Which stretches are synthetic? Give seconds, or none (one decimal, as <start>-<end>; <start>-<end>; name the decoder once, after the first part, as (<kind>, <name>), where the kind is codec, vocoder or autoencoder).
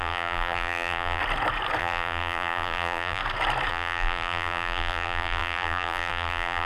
0.0-1.2 (vocoder, BigVGAN v2); 1.8-3.2; 3.7-6.7